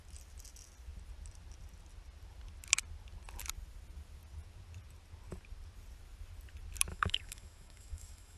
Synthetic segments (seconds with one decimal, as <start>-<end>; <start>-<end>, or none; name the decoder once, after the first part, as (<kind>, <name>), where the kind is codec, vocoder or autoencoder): 6.9-8.4 (autoencoder, DAC-VAE)